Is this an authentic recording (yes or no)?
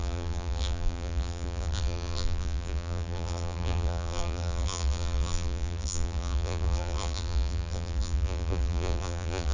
no